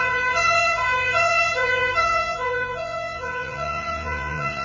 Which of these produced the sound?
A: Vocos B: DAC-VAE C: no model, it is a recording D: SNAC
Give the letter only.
A